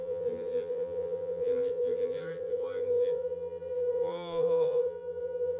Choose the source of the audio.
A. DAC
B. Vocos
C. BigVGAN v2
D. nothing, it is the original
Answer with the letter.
C